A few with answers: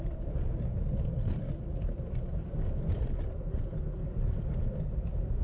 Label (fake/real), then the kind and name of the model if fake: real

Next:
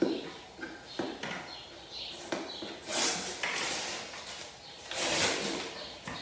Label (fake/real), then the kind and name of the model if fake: real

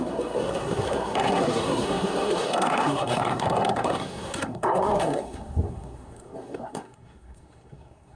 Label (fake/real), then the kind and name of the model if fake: fake, codec, SNAC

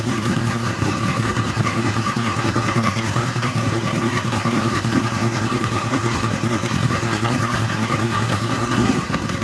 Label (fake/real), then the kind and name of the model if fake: fake, codec, SNAC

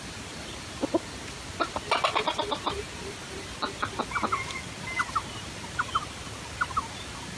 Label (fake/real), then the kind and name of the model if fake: real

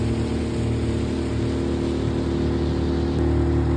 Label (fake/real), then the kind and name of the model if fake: real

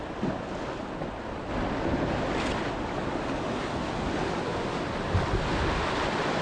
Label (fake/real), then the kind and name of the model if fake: real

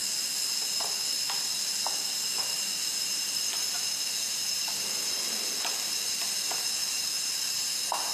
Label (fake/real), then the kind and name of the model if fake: real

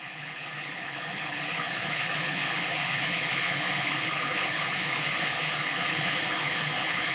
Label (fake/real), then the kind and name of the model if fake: fake, codec, HILCodec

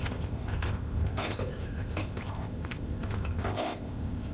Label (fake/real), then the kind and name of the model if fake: fake, codec, ZipCodec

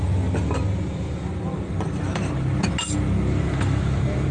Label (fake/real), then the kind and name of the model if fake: real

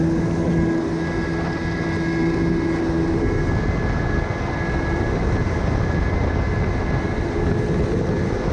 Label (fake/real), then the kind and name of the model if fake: real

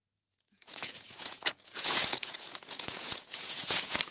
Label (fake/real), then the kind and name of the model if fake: fake, vocoder, Vocos